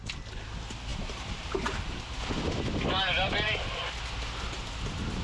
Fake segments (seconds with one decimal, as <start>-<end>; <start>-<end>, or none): none